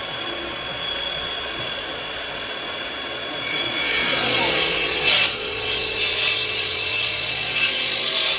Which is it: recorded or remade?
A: remade